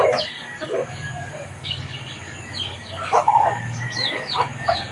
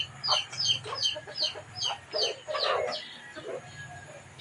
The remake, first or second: first